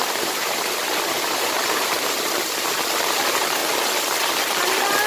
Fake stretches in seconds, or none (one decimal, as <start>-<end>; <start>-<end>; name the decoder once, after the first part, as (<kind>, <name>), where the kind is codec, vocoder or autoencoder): 0.0-3.6 (vocoder, BigVGAN v2)